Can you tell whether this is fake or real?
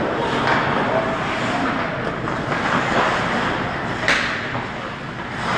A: real